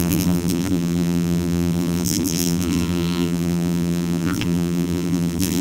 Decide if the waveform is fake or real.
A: fake